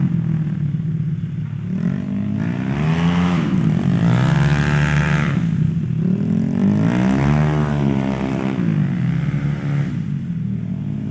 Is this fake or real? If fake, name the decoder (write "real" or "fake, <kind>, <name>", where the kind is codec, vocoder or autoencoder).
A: real